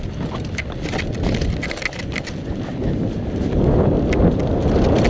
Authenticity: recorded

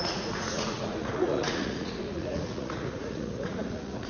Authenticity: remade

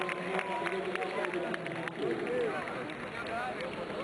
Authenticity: recorded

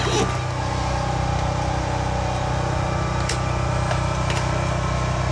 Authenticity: recorded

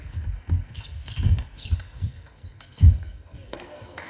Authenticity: remade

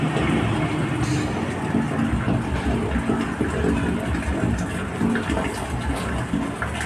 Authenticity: recorded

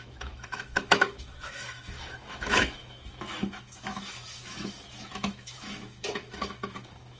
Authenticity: remade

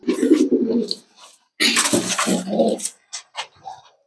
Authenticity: recorded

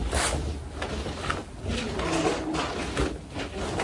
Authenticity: recorded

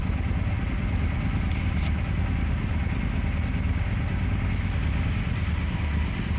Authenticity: recorded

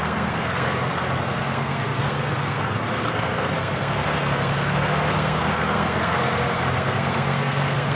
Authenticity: remade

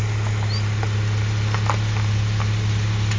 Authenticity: recorded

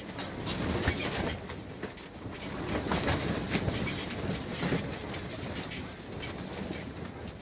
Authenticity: recorded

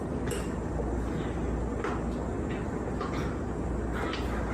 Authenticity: recorded